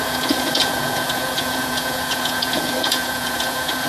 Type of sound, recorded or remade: remade